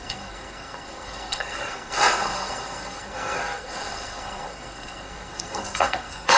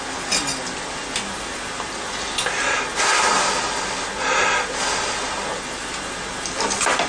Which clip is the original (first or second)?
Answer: second